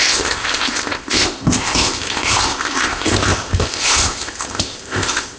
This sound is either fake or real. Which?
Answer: fake